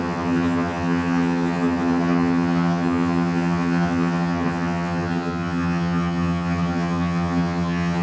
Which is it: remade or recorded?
remade